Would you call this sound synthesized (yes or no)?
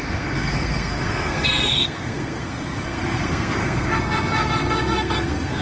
yes